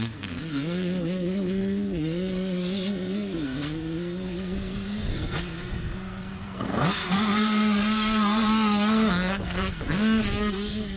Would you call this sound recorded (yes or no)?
no